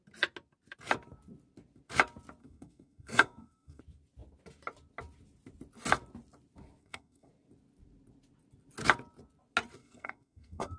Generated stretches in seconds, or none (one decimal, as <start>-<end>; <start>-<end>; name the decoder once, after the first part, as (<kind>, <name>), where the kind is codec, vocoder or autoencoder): 2.4-3.8 (codec, SNAC); 6.8-7.3; 9.8-10.8

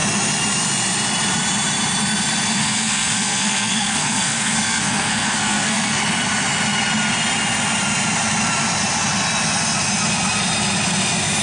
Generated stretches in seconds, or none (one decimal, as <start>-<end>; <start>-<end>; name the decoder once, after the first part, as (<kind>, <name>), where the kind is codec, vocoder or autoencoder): 2.6-6.0 (codec, SNAC)

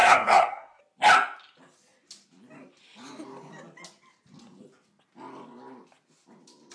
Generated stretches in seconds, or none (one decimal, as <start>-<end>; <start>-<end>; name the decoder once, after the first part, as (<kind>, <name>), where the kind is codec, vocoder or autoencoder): 0.0-0.8 (codec, SNAC)

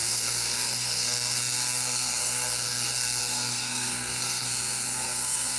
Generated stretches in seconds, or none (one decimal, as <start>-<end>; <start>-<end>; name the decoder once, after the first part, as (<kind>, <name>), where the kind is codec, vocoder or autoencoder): 0.0-5.6 (codec, SNAC)

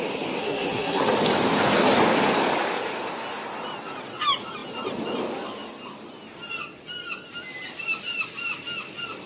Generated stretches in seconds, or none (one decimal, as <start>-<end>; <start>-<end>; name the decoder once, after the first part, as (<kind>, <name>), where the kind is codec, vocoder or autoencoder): 0.4-1.0 (codec, SNAC)